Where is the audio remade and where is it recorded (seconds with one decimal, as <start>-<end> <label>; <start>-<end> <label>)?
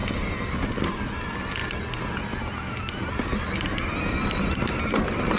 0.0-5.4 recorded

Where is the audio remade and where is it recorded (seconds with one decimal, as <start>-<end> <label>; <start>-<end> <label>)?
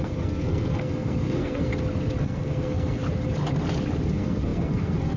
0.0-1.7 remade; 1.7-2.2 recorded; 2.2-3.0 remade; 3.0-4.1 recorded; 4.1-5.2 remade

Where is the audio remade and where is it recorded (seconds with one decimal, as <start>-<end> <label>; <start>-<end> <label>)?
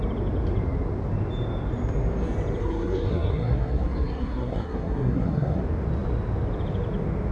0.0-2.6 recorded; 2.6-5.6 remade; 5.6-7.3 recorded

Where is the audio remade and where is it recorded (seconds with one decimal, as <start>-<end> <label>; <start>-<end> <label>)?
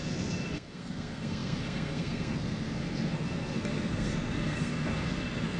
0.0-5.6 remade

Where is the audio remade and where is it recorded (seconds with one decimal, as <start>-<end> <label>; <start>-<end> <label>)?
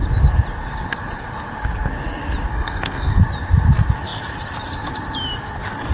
0.0-2.5 recorded; 2.5-3.2 remade; 3.2-5.9 recorded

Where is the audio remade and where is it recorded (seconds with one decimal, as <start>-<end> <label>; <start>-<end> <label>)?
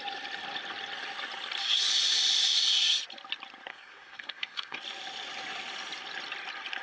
0.0-3.7 recorded; 3.7-4.8 remade; 4.8-6.8 recorded